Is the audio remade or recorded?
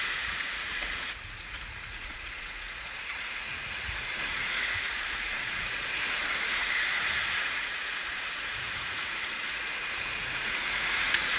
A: remade